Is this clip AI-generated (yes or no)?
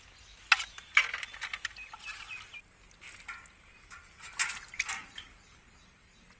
no